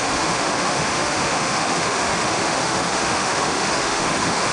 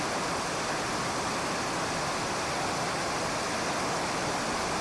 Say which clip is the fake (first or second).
first